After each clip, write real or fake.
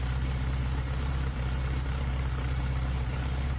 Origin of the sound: fake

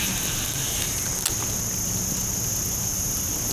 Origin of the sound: real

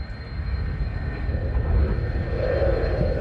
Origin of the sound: real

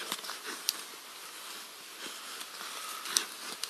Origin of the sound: real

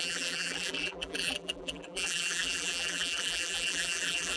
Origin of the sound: fake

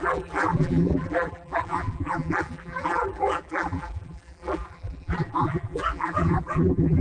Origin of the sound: fake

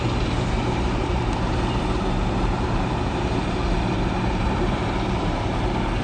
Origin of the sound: fake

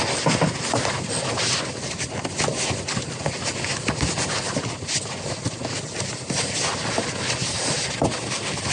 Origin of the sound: real